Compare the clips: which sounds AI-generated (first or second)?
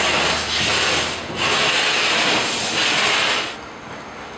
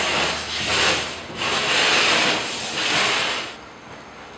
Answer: second